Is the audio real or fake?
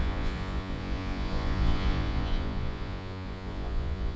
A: fake